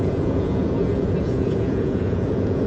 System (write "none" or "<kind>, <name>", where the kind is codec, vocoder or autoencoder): vocoder, Vocos